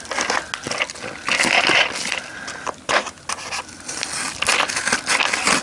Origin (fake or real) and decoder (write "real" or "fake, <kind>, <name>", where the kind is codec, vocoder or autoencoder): real